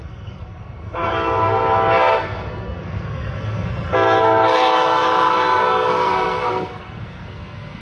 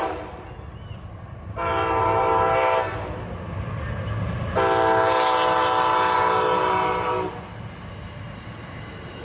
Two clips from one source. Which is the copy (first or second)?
first